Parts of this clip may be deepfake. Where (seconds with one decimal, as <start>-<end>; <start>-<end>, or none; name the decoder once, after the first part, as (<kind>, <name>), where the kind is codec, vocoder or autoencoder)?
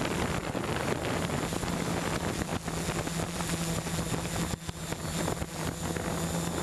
0.0-2.5 (vocoder, BigVGAN v2)